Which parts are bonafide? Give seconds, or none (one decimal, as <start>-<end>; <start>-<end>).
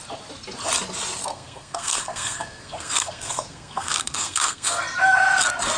0.0-1.3; 4.8-5.8